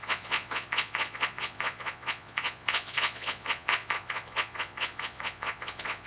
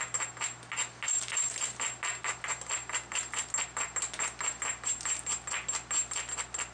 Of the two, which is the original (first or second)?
second